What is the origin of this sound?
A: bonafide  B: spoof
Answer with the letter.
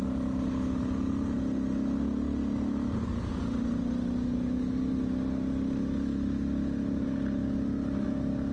A